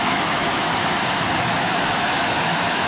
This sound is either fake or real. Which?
fake